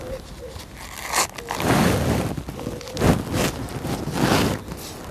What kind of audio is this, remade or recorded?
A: recorded